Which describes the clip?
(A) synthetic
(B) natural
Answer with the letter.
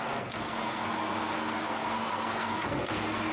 A